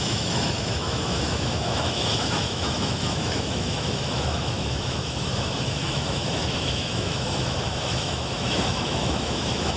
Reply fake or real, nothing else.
fake